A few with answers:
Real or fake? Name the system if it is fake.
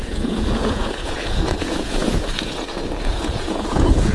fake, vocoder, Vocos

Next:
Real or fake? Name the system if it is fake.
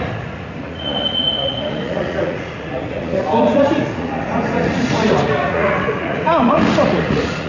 fake, vocoder, Vocos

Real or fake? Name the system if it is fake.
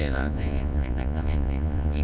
fake, vocoder, Vocos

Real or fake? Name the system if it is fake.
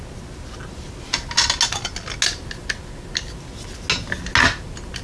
real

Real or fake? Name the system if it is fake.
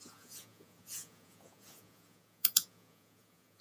fake, vocoder, Vocos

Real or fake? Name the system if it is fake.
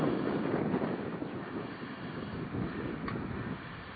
real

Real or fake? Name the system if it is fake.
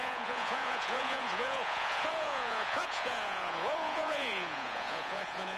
fake, vocoder, Vocos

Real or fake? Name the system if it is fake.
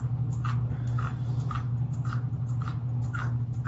real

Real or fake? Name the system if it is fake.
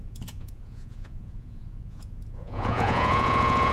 fake, vocoder, Vocos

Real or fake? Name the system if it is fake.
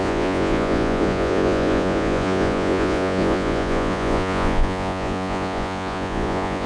fake, vocoder, Vocos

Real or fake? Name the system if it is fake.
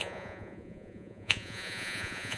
fake, vocoder, Vocos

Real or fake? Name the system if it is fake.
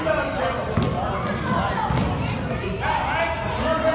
real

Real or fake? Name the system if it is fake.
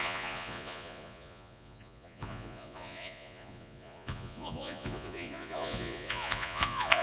fake, vocoder, Vocos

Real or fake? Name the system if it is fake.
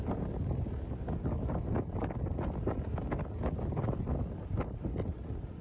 real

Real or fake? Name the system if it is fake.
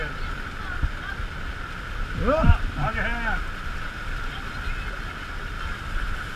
real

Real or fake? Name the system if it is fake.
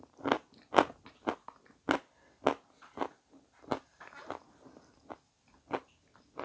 real